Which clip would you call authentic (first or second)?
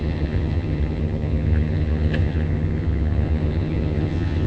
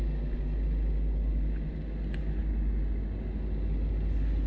second